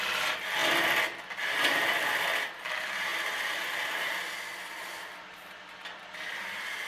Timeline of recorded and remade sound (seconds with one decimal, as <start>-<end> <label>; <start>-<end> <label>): 0.0-6.9 recorded